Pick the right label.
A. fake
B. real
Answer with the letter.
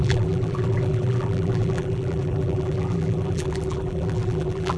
A